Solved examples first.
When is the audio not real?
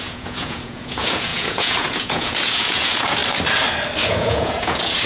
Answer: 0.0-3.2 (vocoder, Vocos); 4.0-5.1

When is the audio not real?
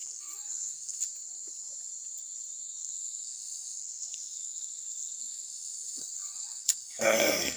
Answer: 0.0-1.1 (codec, SNAC); 2.8-7.6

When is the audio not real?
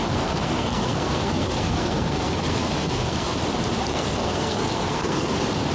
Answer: 0.0-3.4 (codec, SNAC); 3.9-5.3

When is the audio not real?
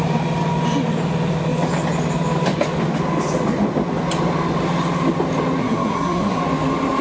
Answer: 5.6-6.4 (codec, SNAC)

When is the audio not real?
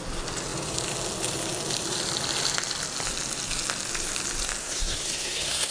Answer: 4.6-5.7 (codec, SNAC)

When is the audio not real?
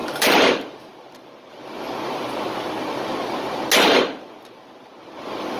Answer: 0.0-0.9 (vocoder, BigVGAN v2)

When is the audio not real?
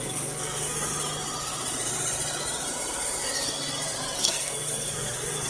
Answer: 0.0-0.9 (codec, SNAC); 4.2-5.5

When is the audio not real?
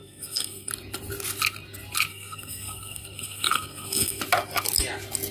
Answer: 0.0-0.7 (codec, SNAC); 2.1-4.2